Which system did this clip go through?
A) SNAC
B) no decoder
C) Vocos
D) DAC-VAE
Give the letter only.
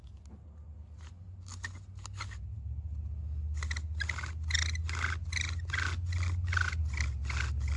B